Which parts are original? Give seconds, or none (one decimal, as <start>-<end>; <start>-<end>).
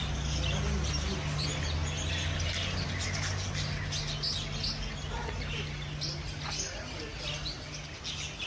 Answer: 0.0-8.5